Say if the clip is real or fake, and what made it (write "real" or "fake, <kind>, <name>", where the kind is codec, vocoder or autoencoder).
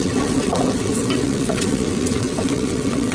fake, vocoder, WaveNeXt